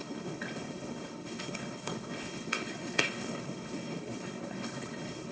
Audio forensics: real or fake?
fake